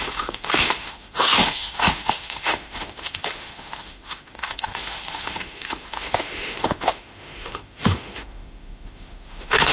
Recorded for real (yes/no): no